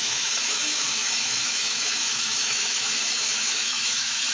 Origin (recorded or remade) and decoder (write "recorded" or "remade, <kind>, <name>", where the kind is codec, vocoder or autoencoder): remade, autoencoder, DAC-VAE